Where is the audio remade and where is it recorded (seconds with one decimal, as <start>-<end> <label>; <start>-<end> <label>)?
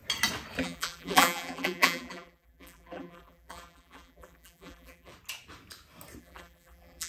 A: 0.0-0.6 recorded; 0.6-5.1 remade; 5.1-6.2 recorded; 6.2-7.1 remade